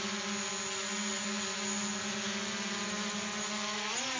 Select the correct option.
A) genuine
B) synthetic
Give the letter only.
A